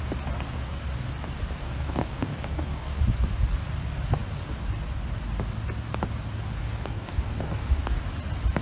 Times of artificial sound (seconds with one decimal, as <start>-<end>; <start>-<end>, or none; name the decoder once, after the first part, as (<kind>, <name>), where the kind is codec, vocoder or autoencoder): 1.6-3.0 (codec, DAC); 6.6-8.0